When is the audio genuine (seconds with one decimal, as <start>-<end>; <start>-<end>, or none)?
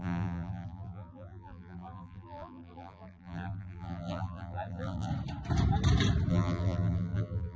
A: 5.1-6.3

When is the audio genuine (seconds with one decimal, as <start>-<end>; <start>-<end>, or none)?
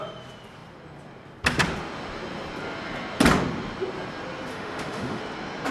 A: 0.0-4.5; 5.2-5.7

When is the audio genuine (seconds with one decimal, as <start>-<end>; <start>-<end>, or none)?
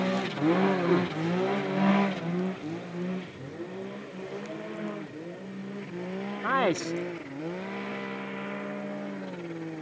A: 0.0-9.8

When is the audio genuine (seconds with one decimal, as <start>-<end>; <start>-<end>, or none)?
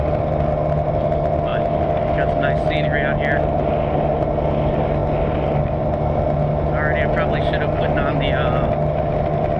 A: 0.0-9.6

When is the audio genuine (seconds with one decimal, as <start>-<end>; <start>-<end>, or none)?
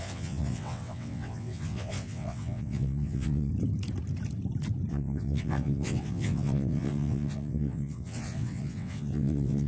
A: 3.5-4.9